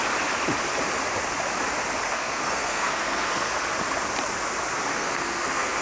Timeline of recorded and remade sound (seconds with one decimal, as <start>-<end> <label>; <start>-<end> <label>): 0.0-2.1 recorded; 2.1-3.5 remade; 3.5-4.9 recorded; 4.9-5.8 remade